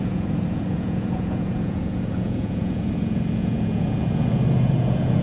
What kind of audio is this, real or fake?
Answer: fake